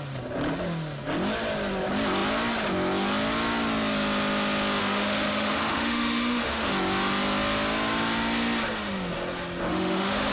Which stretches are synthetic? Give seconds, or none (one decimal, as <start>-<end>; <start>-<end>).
4.8-6.7; 9.7-10.3